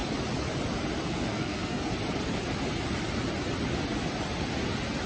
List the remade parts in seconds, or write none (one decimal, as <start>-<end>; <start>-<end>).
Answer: 1.3-1.9